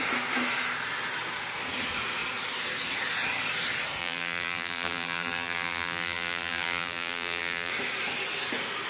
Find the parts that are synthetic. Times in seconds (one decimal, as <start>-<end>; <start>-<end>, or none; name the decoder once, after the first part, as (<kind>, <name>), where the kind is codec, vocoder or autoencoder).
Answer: 4.0-7.7 (vocoder, BigVGAN v2)